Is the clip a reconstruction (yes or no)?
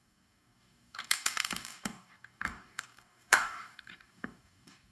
yes